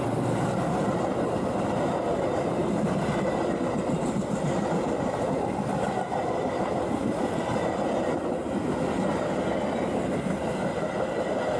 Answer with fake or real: real